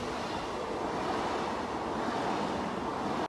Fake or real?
real